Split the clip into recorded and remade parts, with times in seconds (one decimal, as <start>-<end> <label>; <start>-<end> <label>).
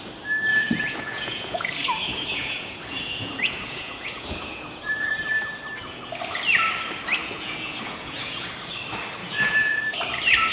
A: 0.0-0.5 recorded; 0.5-5.1 remade; 5.1-7.2 recorded; 7.2-8.5 remade; 8.5-9.2 recorded; 9.2-9.8 remade; 9.8-10.5 recorded